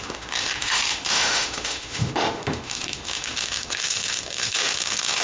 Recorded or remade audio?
remade